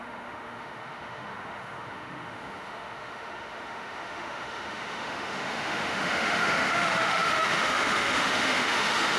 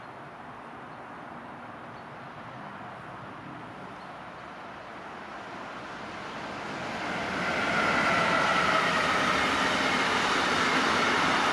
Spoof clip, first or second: first